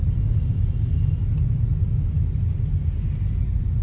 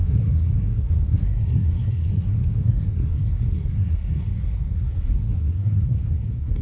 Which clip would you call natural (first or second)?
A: first